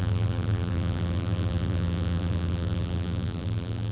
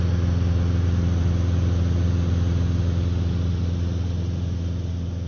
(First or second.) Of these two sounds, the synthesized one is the first